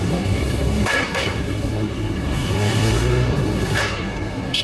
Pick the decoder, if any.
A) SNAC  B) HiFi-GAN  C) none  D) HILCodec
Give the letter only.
A